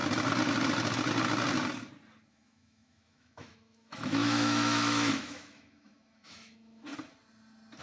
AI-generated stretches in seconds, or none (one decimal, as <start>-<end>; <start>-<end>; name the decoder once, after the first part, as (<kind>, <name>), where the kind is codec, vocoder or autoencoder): 2.3-6.9 (autoencoder, DAC-VAE)